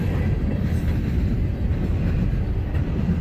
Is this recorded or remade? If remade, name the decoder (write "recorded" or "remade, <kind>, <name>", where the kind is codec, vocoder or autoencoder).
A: recorded